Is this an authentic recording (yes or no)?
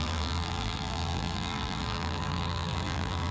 no